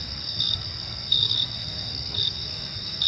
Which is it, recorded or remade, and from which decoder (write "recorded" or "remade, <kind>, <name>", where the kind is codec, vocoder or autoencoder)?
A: remade, codec, SNAC